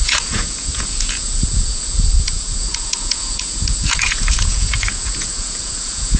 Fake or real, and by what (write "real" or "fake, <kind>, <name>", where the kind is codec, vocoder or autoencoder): fake, vocoder, Vocos